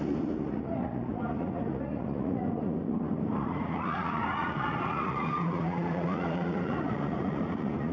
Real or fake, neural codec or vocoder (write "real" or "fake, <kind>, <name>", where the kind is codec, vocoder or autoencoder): fake, vocoder, Vocos